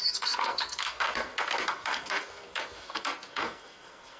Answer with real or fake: fake